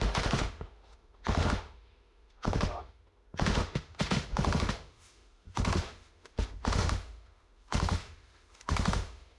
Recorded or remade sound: remade